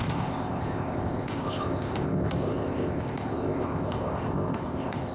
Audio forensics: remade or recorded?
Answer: remade